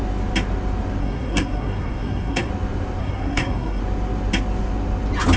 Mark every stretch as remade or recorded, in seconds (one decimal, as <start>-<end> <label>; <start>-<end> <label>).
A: 0.0-1.0 recorded; 1.0-2.5 remade; 2.5-3.0 recorded; 3.0-3.8 remade; 3.8-5.4 recorded